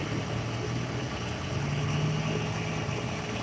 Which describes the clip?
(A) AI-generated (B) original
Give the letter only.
B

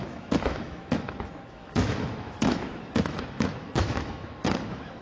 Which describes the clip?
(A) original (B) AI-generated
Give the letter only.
B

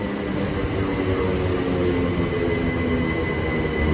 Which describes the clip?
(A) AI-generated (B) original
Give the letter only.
B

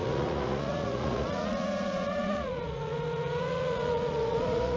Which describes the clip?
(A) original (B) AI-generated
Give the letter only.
B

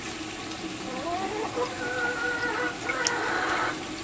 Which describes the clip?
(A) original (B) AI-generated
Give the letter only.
A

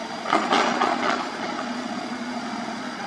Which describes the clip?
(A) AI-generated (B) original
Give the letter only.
A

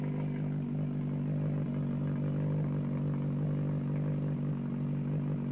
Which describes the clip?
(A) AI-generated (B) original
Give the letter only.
B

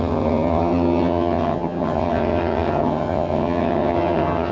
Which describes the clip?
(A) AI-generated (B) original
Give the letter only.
A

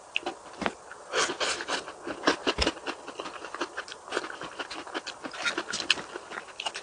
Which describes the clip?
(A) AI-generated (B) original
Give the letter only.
A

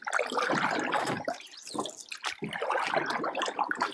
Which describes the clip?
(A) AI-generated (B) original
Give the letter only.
B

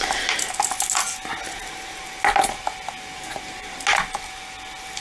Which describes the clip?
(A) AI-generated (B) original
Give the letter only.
B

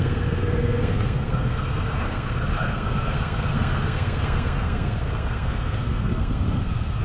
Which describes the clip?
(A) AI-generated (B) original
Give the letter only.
A